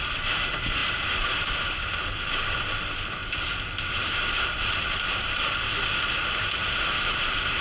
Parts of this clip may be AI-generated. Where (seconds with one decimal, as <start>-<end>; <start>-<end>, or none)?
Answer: 0.8-2.1; 6.6-7.6